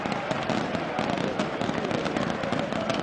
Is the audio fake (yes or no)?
yes